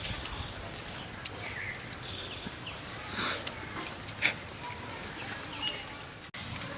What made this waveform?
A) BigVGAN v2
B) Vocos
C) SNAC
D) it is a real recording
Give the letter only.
D